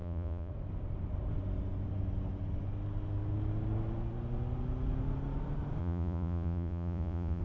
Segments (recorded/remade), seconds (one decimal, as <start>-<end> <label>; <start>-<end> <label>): 0.0-0.5 remade; 0.5-5.8 recorded; 5.8-7.4 remade